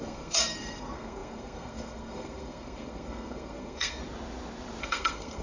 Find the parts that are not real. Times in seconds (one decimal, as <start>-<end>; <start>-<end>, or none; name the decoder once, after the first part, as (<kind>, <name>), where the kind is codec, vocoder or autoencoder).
0.0-4.0 (codec, SNAC); 4.8-5.4